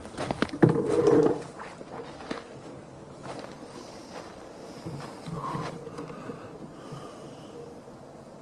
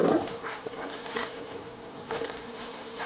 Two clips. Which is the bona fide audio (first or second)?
first